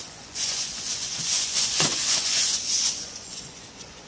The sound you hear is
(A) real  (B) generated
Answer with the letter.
B